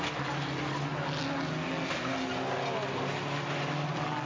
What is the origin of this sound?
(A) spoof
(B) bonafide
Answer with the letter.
B